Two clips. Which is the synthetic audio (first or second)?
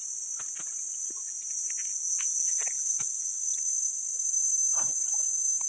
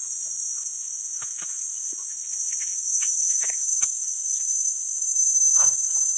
second